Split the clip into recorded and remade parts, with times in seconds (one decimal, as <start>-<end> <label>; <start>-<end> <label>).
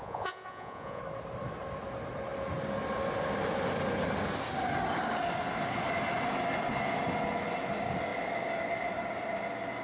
0.0-1.0 remade; 1.0-9.8 recorded